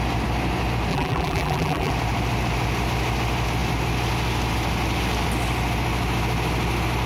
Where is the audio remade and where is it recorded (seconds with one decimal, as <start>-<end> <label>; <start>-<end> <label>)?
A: 0.0-0.9 recorded; 0.9-1.9 remade; 1.9-7.1 recorded